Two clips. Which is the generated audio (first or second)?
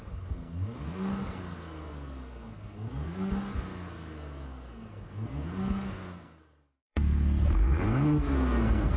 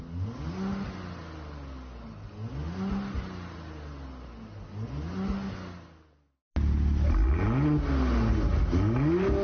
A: first